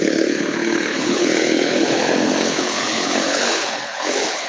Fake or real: fake